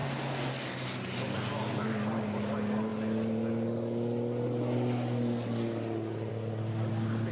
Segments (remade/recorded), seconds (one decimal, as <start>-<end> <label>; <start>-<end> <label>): 0.0-0.5 remade; 0.5-7.3 recorded